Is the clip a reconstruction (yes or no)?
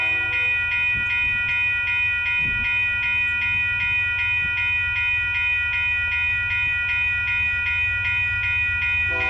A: no